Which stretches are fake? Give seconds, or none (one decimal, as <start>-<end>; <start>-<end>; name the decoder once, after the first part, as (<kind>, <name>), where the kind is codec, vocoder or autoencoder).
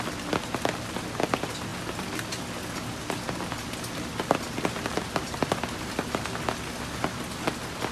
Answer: none